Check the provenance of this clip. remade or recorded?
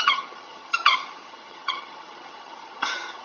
remade